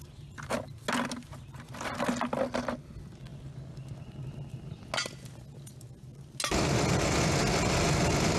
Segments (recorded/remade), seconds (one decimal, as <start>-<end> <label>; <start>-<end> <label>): 0.0-8.4 recorded